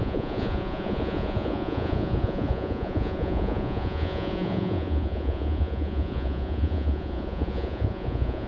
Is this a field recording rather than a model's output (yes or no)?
no